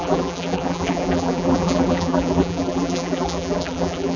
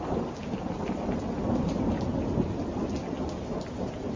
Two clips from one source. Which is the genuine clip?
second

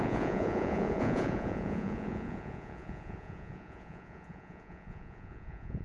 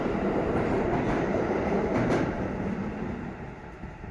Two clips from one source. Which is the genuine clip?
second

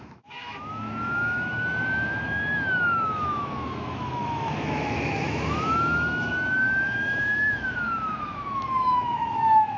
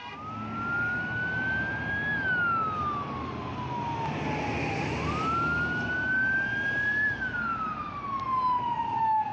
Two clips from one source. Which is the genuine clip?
second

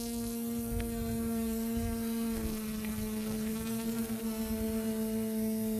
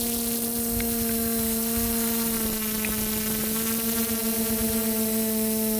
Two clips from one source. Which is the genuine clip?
second